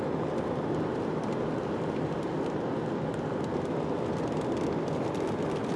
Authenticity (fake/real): real